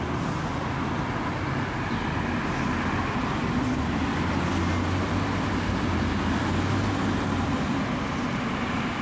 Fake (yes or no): no